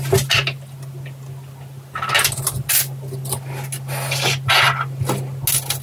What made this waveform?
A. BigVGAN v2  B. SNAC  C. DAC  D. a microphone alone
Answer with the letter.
D